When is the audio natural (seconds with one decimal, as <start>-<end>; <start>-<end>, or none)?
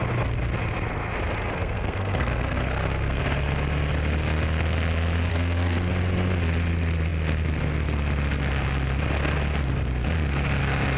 0.0-1.5; 3.2-5.3; 5.9-11.0